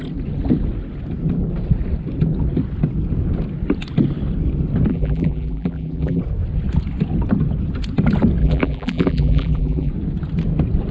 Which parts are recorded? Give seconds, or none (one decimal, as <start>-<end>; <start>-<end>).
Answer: 0.0-4.9; 6.2-8.4; 9.9-10.9